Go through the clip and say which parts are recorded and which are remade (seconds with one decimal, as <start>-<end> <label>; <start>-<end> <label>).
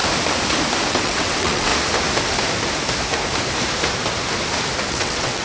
0.0-0.9 recorded; 0.9-1.7 remade; 1.7-4.9 recorded; 4.9-5.4 remade